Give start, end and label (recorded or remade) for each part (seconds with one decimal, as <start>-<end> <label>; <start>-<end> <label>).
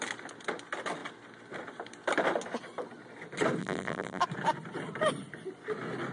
0.0-3.6 recorded; 3.6-4.2 remade; 4.2-6.1 recorded